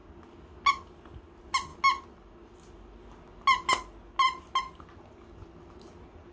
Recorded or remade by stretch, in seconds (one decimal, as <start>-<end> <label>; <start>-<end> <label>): 0.0-6.3 recorded